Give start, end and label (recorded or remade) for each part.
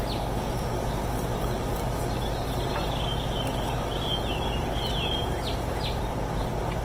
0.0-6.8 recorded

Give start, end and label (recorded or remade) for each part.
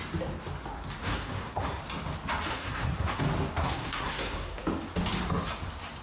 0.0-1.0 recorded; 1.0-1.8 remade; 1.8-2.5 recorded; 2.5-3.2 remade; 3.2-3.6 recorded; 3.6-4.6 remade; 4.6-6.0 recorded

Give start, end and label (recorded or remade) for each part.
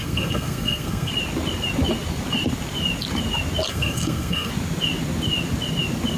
0.0-1.1 remade; 1.1-3.7 recorded; 3.7-4.5 remade; 4.5-6.2 recorded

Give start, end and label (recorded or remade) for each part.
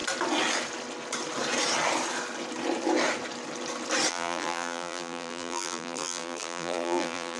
0.0-4.1 recorded; 4.1-7.4 remade